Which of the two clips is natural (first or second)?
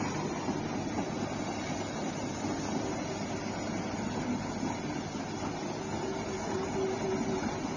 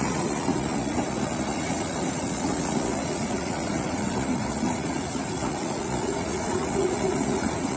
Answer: first